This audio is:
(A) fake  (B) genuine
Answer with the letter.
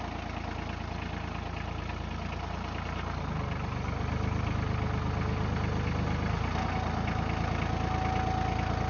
B